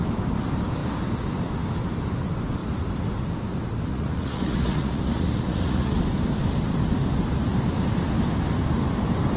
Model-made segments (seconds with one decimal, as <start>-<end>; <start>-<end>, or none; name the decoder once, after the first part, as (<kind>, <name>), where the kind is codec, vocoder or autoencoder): 3.9-5.9 (vocoder, Vocos)